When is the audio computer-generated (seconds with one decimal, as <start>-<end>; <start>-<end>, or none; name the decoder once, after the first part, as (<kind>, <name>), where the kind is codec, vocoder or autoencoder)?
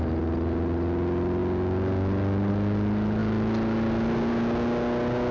none